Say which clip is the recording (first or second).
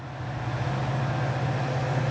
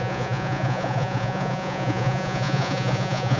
first